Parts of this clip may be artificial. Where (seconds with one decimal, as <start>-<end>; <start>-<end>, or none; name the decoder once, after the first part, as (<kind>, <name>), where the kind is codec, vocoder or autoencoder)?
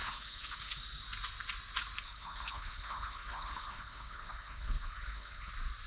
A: 0.0-0.8 (codec, HILCodec); 2.0-5.5